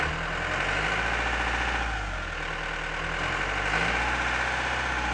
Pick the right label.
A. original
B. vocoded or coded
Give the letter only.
A